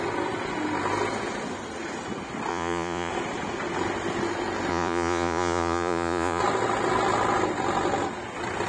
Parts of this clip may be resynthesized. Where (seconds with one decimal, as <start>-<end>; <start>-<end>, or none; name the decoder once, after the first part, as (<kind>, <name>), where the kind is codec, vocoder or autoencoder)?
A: 2.5-3.1 (vocoder, Vocos); 4.7-6.4